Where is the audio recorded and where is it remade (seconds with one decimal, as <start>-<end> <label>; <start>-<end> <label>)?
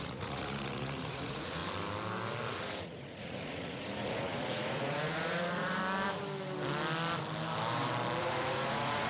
0.0-1.6 remade; 1.6-2.5 recorded; 2.5-5.8 remade; 5.8-8.2 recorded; 8.2-9.1 remade